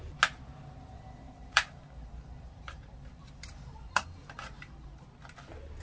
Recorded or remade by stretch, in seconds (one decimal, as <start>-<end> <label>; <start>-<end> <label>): 0.0-1.4 recorded; 1.4-4.9 remade; 4.9-5.8 recorded